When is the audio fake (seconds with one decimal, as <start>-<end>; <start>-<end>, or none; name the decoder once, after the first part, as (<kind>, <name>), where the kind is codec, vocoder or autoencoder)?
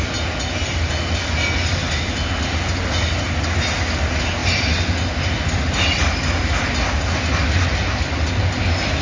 none